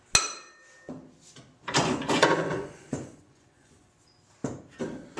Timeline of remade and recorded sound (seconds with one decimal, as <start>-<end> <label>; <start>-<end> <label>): 0.0-1.8 recorded; 1.8-3.9 remade; 3.9-5.2 recorded

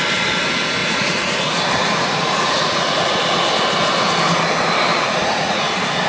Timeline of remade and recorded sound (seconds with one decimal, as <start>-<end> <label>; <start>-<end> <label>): 0.0-0.8 recorded; 0.8-1.4 remade; 1.4-1.8 recorded; 1.8-3.2 remade; 3.2-4.9 recorded; 4.9-5.6 remade; 5.6-6.1 recorded

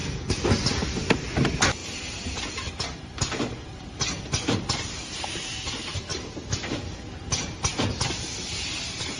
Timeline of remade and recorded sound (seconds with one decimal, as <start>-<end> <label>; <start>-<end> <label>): 0.0-9.2 recorded

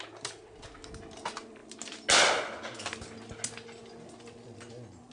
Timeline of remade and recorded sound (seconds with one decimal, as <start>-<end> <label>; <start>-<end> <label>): 0.0-5.1 recorded

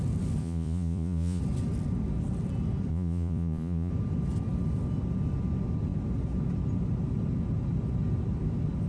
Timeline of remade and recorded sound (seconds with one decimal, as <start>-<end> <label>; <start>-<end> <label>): 0.0-0.4 recorded; 0.4-1.4 remade; 1.4-2.9 recorded; 2.9-3.9 remade; 3.9-8.9 recorded